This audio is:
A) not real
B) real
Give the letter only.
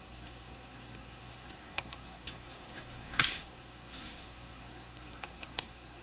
A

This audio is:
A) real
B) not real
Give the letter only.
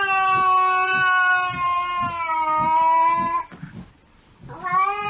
A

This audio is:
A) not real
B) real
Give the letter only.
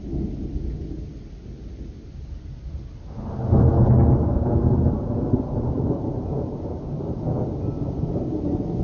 B